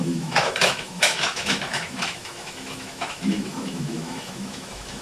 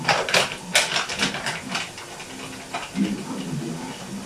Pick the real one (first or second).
second